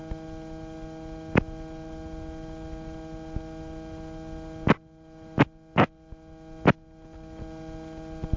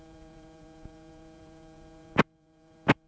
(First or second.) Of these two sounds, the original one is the first